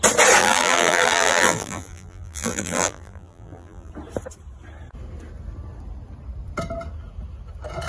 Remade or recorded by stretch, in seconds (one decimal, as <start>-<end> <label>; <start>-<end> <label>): 0.0-0.4 recorded; 0.4-3.9 remade; 3.9-7.9 recorded